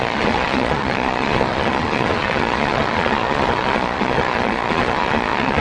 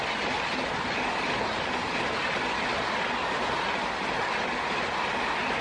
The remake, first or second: first